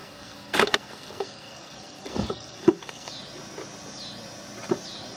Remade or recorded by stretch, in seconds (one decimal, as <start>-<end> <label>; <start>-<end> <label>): 0.0-3.1 remade; 3.1-5.2 recorded